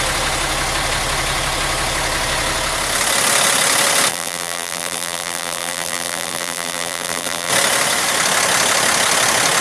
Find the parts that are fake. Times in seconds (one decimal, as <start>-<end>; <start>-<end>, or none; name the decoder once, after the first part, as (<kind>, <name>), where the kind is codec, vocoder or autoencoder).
4.1-7.5 (vocoder, BigVGAN v2)